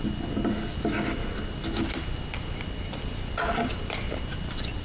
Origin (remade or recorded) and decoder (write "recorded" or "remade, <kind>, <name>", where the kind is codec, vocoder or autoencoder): recorded